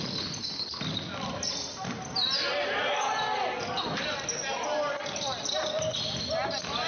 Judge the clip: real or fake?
real